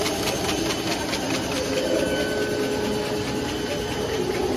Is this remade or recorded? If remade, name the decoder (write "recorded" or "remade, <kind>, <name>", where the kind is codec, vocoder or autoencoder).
recorded